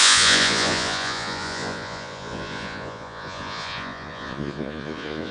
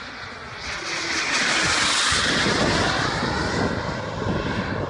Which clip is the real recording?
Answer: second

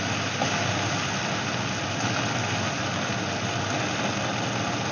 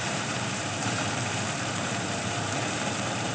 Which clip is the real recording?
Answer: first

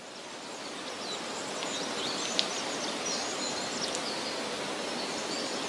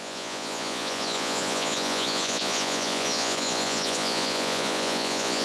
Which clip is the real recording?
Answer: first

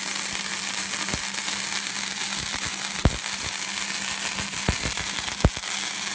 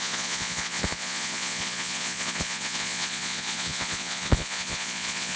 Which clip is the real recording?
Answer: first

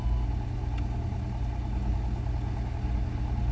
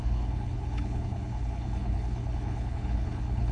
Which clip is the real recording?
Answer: first